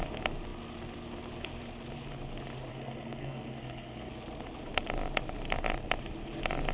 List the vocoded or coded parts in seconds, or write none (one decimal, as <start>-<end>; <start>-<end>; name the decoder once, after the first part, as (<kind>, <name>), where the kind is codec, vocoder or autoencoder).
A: 2.7-4.1 (codec, SNAC)